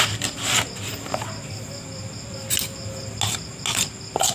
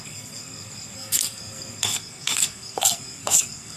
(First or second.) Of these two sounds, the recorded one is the first